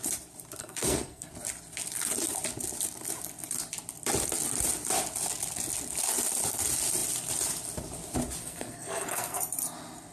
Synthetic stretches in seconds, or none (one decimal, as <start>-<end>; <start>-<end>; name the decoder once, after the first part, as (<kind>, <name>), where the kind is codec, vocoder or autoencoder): 0.6-1.3 (codec, SNAC); 8.4-9.4